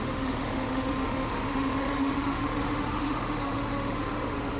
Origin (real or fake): fake